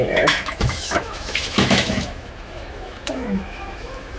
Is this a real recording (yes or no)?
no